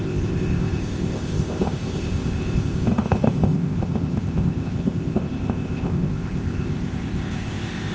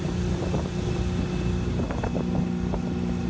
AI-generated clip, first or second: first